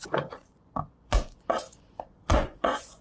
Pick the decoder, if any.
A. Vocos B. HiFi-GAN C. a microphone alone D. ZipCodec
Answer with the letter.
A